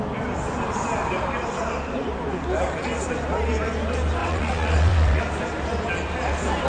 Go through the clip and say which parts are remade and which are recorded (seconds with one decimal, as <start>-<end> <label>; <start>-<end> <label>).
0.0-4.2 recorded; 4.2-5.2 remade; 5.2-6.7 recorded

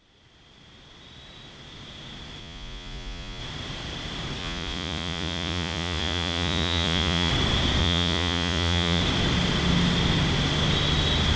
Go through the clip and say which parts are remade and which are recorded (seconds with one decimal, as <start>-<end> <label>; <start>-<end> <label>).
0.0-2.4 recorded; 2.4-3.4 remade; 3.4-4.4 recorded; 4.4-7.3 remade; 7.3-7.8 recorded; 7.8-9.0 remade; 9.0-11.4 recorded

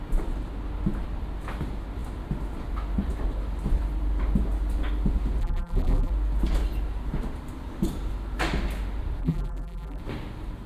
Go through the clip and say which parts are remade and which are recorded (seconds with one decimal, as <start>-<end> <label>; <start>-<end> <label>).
0.0-5.4 recorded; 5.4-6.1 remade; 6.1-9.2 recorded; 9.2-10.0 remade; 10.0-10.7 recorded

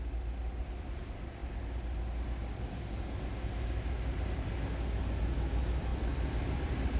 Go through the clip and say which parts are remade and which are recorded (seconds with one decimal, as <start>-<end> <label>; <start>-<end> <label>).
0.0-7.0 recorded

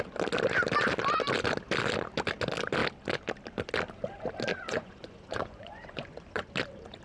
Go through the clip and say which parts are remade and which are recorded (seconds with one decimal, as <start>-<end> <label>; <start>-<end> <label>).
0.0-4.5 recorded; 4.5-6.5 remade; 6.5-7.0 recorded

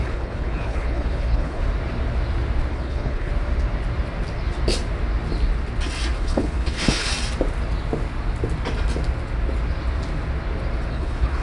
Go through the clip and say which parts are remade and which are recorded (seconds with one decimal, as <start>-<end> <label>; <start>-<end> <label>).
0.0-1.6 remade; 1.6-2.7 recorded; 2.7-3.3 remade; 3.3-6.2 recorded; 6.2-7.1 remade; 7.1-10.9 recorded; 10.9-11.4 remade

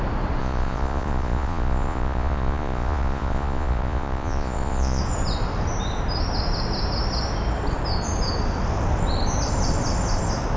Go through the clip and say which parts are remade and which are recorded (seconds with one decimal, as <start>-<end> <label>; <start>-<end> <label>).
0.0-0.4 recorded; 0.4-5.0 remade; 5.0-10.6 recorded